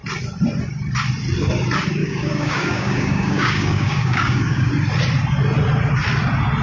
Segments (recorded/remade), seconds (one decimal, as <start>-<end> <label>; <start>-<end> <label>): 0.0-2.0 recorded; 2.0-4.7 remade; 4.7-6.6 recorded